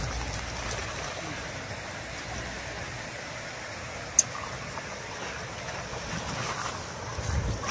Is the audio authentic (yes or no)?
yes